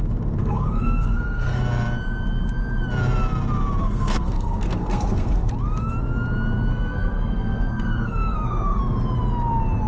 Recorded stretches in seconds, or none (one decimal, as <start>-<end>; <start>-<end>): 0.0-0.4; 1.6-3.8; 5.5-6.7; 8.8-9.9